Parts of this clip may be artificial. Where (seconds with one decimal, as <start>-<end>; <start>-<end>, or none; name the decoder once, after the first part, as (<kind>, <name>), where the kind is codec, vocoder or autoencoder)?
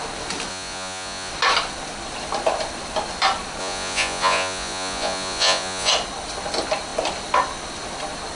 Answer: 0.5-1.3 (vocoder, Vocos); 3.6-5.9